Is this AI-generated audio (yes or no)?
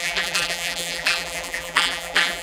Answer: yes